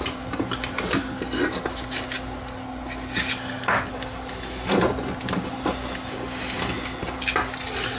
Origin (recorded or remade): recorded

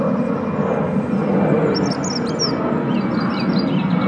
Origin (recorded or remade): recorded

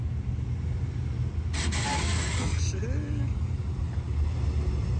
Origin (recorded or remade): recorded